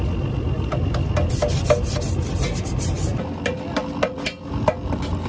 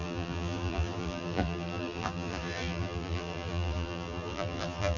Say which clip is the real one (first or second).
first